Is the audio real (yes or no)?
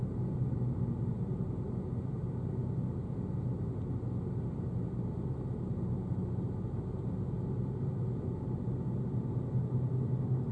yes